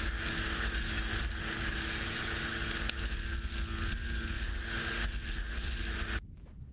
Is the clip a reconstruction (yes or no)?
no